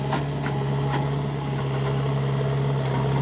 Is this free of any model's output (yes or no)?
yes